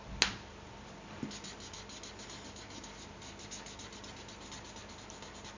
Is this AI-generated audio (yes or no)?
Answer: no